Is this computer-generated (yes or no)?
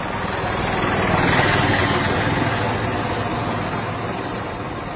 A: no